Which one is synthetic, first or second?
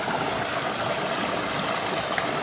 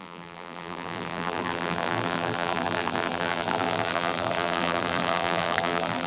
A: second